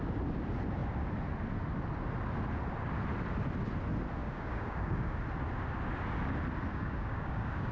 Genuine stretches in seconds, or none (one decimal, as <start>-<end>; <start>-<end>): 0.0-4.2; 5.2-6.7